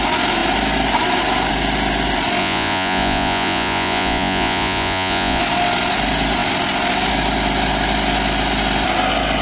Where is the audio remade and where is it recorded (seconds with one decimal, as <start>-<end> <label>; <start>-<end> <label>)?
0.0-2.4 recorded; 2.4-5.4 remade; 5.4-9.4 recorded